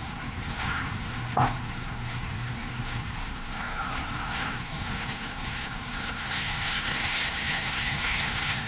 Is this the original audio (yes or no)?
no